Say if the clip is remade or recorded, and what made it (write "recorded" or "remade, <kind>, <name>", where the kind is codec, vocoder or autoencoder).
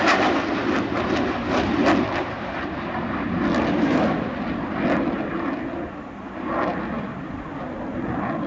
recorded